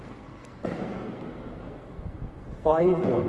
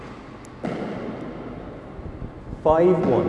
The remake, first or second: first